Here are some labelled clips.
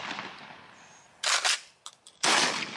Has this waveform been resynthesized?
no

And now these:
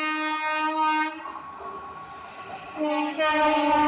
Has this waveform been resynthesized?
no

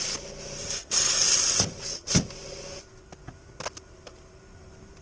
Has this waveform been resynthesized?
no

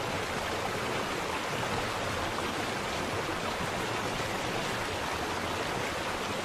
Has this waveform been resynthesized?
no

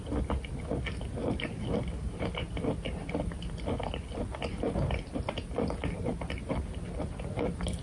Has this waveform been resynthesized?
no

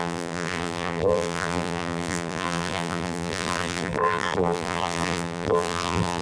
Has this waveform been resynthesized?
yes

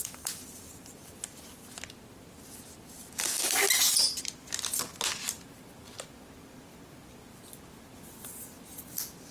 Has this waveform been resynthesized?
no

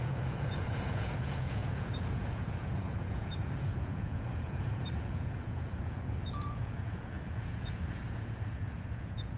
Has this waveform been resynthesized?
yes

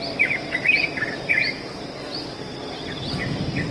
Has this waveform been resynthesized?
no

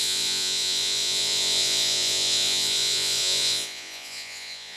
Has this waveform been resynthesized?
yes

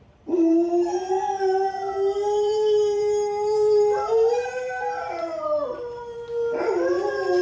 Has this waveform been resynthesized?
yes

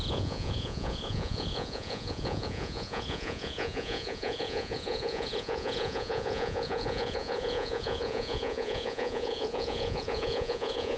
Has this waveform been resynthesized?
yes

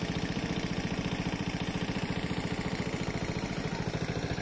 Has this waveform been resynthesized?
yes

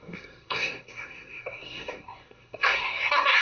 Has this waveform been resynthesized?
yes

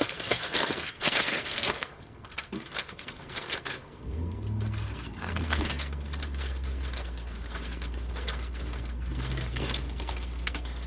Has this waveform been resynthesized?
yes